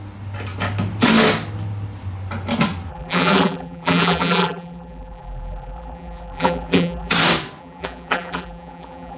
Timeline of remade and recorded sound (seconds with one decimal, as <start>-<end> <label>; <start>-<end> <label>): 0.0-2.9 recorded; 2.9-7.1 remade; 7.1-7.6 recorded; 7.6-9.2 remade